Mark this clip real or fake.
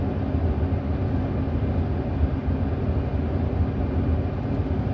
real